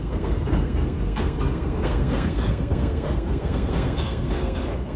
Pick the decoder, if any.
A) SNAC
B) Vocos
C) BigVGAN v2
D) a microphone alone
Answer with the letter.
A